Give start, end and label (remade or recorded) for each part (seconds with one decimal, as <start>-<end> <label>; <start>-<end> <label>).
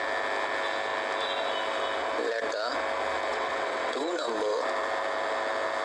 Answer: 0.0-3.3 recorded; 3.3-4.3 remade; 4.3-5.8 recorded